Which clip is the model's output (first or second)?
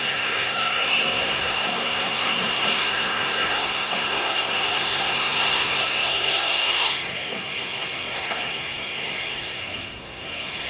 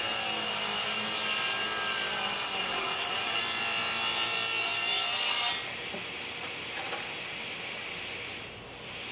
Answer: first